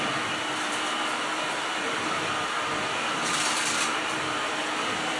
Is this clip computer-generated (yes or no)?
yes